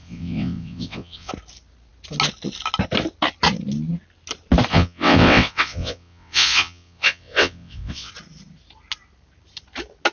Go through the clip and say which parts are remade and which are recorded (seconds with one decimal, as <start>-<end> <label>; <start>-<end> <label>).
0.0-1.3 remade; 1.3-4.7 recorded; 4.7-8.1 remade; 8.1-10.1 recorded